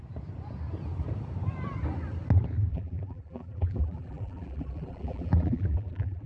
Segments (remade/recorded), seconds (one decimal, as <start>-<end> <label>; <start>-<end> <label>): 0.0-2.7 recorded; 2.7-6.3 remade

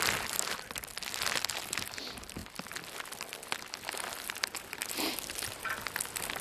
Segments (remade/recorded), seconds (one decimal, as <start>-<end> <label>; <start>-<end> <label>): 0.0-6.4 recorded

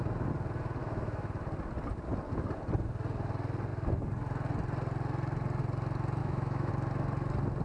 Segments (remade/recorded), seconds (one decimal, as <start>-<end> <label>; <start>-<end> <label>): 0.0-0.8 recorded; 0.8-1.3 remade; 1.3-6.2 recorded; 6.2-6.7 remade; 6.7-7.6 recorded

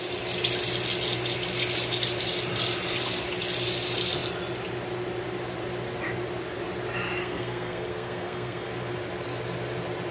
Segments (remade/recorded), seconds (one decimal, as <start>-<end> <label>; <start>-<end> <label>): 0.0-7.2 recorded; 7.2-8.7 remade; 8.7-10.1 recorded

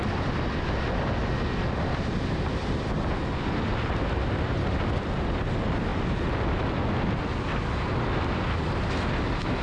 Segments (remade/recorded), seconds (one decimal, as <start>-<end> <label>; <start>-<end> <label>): 0.0-9.6 recorded

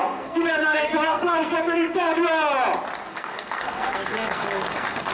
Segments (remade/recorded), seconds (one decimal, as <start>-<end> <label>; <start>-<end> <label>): 0.0-2.1 remade; 2.1-3.1 recorded; 3.1-5.1 remade

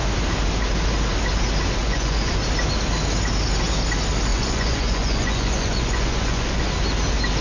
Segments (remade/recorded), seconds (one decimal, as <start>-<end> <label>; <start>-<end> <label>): 0.0-1.8 recorded; 1.8-2.3 remade; 2.3-4.3 recorded; 4.3-6.6 remade; 6.6-7.4 recorded